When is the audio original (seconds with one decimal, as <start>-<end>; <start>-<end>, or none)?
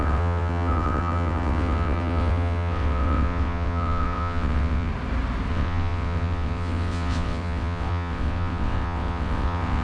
4.9-5.5